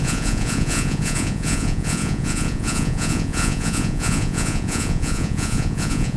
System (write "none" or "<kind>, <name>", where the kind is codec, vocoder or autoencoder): vocoder, Vocos